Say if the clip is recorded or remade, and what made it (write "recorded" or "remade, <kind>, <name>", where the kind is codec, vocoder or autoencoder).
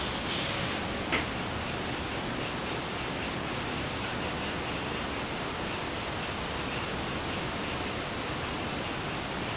recorded